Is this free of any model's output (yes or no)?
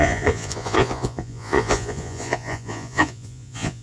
no